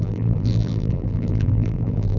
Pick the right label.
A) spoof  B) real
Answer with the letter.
A